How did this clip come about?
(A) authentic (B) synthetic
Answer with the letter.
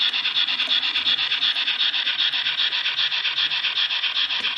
A